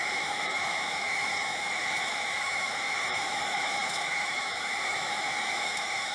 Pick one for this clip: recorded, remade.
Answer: remade